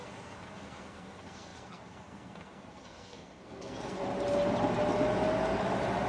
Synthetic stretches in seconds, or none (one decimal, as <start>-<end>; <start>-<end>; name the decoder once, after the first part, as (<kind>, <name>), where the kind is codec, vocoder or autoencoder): 0.0-4.0 (codec, SNAC)